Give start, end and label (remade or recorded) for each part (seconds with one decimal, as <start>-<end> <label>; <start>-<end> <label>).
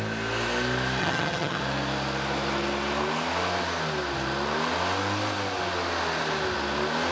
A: 0.0-1.0 recorded; 1.0-1.6 remade; 1.6-7.1 recorded